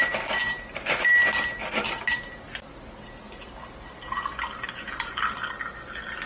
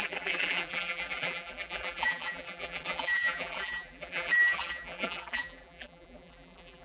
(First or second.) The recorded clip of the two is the first